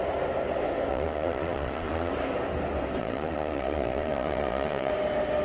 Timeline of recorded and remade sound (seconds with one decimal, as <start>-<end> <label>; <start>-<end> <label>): 0.0-0.9 recorded; 0.9-2.1 remade; 2.1-3.0 recorded; 3.0-4.9 remade; 4.9-5.4 recorded

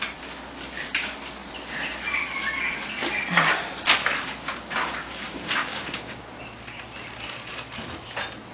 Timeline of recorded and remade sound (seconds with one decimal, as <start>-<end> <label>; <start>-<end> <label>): 0.0-5.0 recorded; 5.0-6.2 remade; 6.2-8.5 recorded